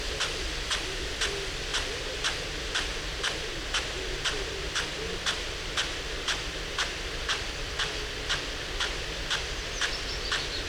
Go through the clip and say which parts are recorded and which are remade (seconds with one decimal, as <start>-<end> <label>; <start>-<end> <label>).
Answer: 0.0-10.7 recorded